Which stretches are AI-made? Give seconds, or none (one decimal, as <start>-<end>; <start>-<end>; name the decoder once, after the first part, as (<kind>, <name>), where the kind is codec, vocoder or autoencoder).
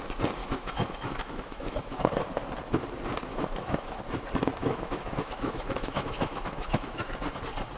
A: 0.4-2.1 (autoencoder, DAC-VAE); 3.3-4.0; 4.6-7.1